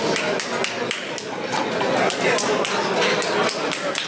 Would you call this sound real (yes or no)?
yes